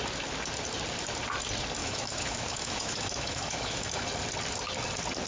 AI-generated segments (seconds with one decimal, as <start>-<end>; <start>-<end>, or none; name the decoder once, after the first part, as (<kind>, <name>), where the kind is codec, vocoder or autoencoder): 1.8-4.0 (autoencoder, DAC-VAE)